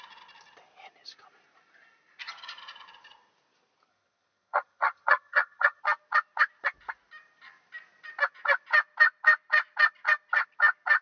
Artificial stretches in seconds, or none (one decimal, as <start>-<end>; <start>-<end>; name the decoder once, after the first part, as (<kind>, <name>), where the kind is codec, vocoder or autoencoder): 3.9-5.8 (vocoder, HiFi-GAN)